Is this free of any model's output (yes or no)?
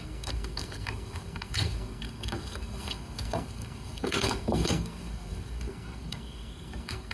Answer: no